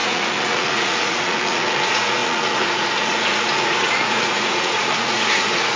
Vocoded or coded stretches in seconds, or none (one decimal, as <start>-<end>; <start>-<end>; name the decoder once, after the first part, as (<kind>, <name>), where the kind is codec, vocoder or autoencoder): 0.0-5.8 (vocoder, Vocos)